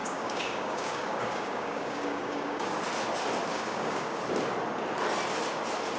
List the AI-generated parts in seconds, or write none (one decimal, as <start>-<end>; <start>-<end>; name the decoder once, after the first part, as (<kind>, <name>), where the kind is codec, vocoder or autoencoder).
0.0-2.7 (codec, DAC); 3.5-4.2